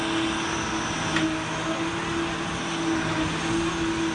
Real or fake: real